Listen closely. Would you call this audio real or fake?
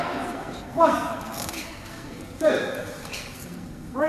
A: fake